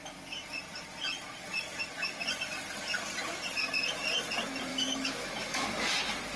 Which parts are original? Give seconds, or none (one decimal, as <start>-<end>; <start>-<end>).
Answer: 0.0-4.7; 6.0-6.4